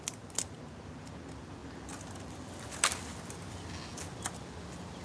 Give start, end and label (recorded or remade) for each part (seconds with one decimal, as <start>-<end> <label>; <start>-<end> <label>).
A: 0.0-5.0 recorded